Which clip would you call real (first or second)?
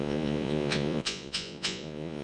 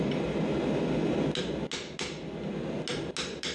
second